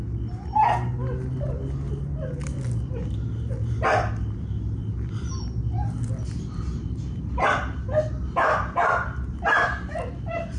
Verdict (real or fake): real